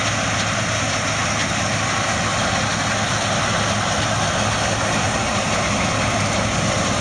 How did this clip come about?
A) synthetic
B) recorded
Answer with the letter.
B